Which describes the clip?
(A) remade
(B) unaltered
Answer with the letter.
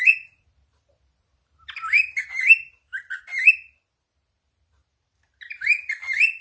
B